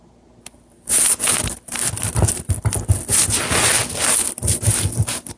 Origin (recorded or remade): recorded